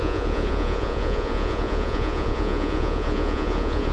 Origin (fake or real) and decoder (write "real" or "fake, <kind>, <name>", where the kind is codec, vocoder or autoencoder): fake, vocoder, Vocos